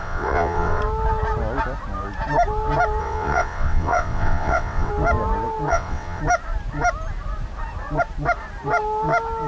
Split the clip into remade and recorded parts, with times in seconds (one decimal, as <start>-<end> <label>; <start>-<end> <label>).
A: 0.0-0.8 remade; 0.8-3.0 recorded; 3.0-4.9 remade; 4.9-5.7 recorded; 5.7-6.2 remade; 6.2-9.5 recorded